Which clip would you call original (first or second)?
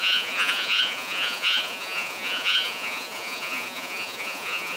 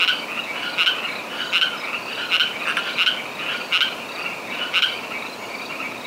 second